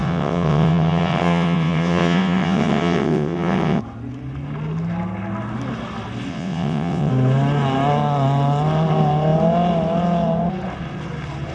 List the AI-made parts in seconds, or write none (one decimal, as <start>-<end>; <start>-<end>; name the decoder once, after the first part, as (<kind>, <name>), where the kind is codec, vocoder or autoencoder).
0.0-3.8 (vocoder, WaveNeXt); 6.3-7.1